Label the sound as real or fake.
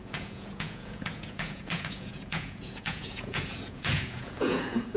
fake